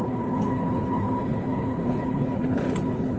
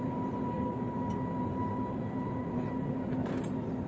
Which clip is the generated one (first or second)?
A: first